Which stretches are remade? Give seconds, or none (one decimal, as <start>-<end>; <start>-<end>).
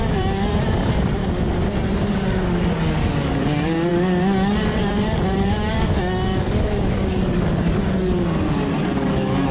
0.0-1.2; 2.1-9.5